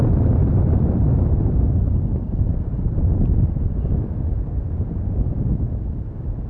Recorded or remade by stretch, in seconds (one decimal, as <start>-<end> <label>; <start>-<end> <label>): 0.0-6.5 recorded